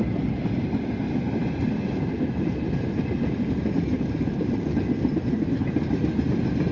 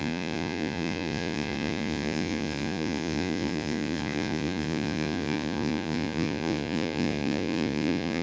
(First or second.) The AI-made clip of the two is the second